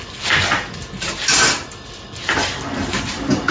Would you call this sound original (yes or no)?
yes